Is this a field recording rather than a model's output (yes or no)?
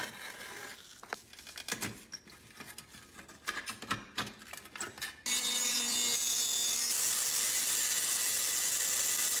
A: yes